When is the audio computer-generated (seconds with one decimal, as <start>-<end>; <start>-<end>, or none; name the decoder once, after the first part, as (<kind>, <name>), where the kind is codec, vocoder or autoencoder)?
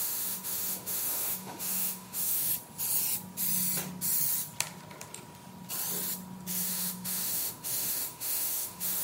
0.0-2.5 (autoencoder, DAC-VAE); 6.5-9.0